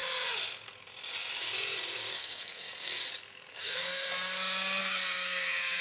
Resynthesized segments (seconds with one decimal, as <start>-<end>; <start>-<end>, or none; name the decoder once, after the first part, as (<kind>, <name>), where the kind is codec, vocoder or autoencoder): 2.1-3.0 (codec, SNAC); 3.5-4.1; 4.8-5.8

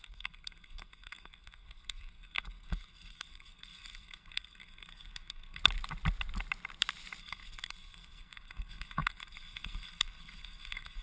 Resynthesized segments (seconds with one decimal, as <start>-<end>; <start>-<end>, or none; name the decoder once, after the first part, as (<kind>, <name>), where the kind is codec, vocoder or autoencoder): 0.0-5.6 (codec, SNAC); 7.2-11.0

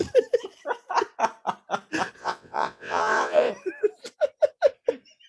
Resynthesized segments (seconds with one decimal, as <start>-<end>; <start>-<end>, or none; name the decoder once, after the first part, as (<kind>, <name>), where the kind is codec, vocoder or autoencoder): 2.2-3.5 (vocoder, WaveNeXt)

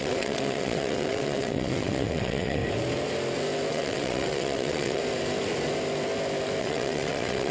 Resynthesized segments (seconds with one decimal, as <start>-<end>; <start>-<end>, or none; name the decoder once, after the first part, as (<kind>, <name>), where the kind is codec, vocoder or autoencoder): 0.0-2.6 (vocoder, WaveNeXt); 3.7-5.0; 6.6-7.5

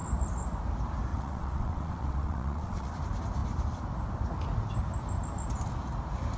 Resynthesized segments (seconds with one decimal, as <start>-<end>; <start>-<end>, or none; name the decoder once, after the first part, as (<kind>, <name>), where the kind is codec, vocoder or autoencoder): 1.1-2.9 (vocoder, WaveNeXt)

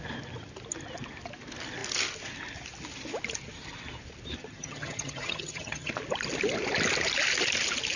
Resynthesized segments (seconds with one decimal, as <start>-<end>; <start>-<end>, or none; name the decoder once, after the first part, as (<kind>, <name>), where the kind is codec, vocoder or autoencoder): 4.4-5.9 (vocoder, HiFi-GAN)

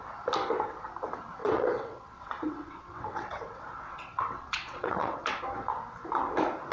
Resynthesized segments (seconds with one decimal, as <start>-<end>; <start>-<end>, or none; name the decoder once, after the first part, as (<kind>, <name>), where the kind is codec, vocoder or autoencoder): 1.4-5.4 (vocoder, WaveNeXt)